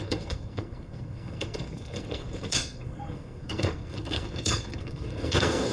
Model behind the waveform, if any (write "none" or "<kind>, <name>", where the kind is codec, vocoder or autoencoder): codec, SNAC